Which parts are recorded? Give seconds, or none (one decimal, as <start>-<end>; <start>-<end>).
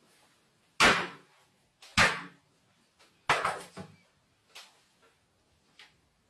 0.0-6.3